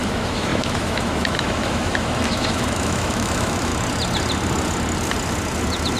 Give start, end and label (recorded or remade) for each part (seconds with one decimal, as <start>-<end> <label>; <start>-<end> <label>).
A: 0.0-3.7 remade; 3.7-6.0 recorded